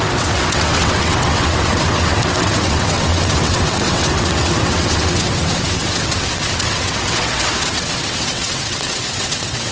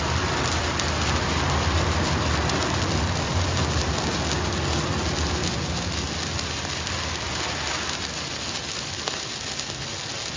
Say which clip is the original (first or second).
second